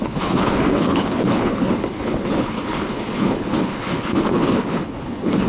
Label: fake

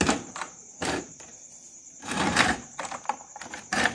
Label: fake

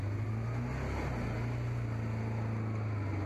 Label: real